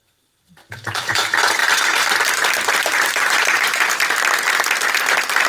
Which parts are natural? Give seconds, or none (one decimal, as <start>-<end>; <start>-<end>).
0.0-0.6; 1.1-1.6; 3.8-5.5